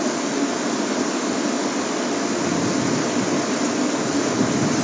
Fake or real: real